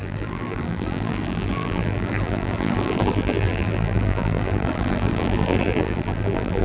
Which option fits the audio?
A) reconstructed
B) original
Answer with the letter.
A